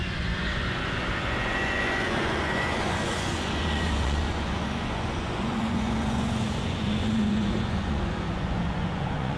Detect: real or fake fake